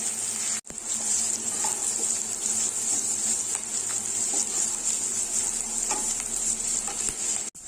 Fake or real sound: real